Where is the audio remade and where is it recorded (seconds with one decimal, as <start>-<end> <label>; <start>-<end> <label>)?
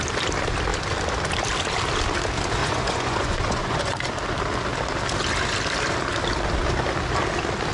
0.0-2.6 recorded; 2.6-3.8 remade; 3.8-7.7 recorded